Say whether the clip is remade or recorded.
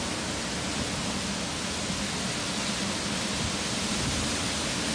recorded